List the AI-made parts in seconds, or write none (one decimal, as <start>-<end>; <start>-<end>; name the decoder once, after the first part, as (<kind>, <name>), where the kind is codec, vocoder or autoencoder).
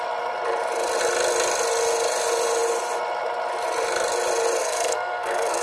4.6-5.6 (codec, SNAC)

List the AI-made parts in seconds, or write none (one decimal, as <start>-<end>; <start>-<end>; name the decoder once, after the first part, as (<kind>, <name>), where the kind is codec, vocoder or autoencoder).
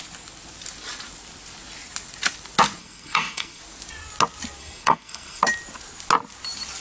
2.8-3.6 (codec, SNAC); 4.6-5.4